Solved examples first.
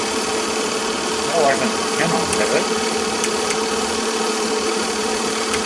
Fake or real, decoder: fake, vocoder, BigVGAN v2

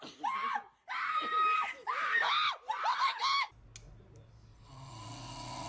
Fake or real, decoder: real